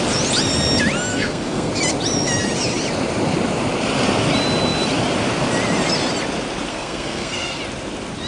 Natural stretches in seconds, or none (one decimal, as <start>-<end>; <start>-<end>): 0.0-1.1; 1.7-6.7; 7.6-8.3